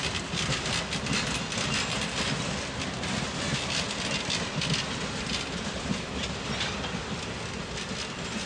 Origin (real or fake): real